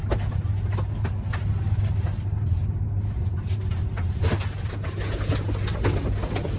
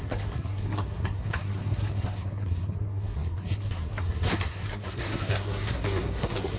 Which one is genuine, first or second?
first